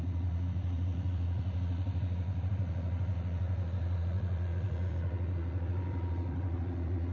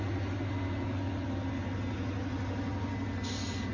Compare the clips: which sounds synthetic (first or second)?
first